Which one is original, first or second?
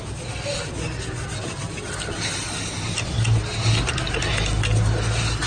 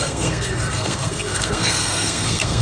first